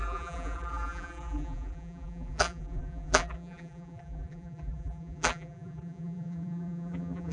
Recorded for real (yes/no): no